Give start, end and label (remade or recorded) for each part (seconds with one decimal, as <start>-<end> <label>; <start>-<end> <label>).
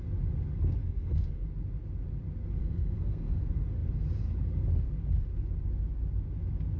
0.0-0.8 recorded; 0.8-1.4 remade; 1.4-2.6 recorded; 2.6-3.4 remade; 3.4-6.8 recorded